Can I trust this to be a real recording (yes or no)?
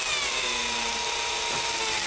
yes